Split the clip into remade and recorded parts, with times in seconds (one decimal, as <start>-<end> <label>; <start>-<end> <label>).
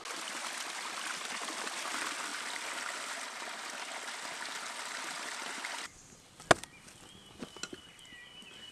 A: 0.0-8.7 recorded